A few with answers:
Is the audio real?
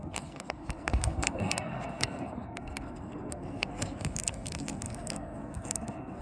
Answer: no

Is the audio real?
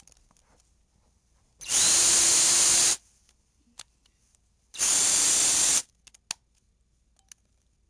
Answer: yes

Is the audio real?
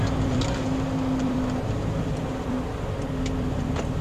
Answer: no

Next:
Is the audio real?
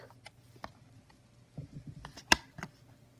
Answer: yes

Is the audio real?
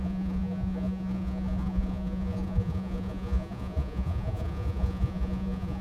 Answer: no